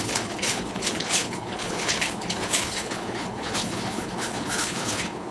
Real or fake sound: fake